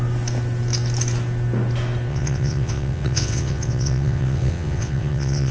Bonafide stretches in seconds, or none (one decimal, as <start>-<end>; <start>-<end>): 0.0-2.1